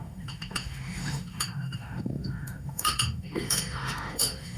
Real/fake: fake